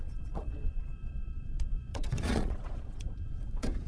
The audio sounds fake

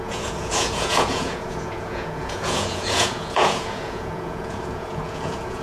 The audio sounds fake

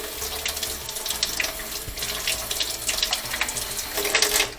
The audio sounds real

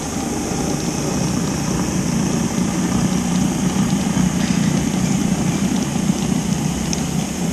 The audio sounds real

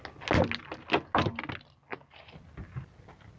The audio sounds real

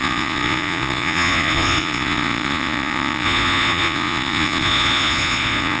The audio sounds fake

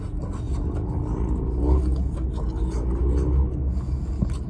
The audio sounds real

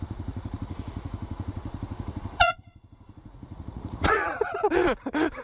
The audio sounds fake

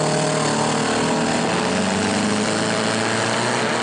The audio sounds real